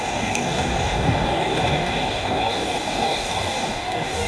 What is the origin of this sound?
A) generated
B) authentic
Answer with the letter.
A